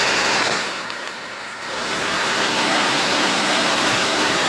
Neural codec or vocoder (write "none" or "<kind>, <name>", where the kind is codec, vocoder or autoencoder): codec, SNAC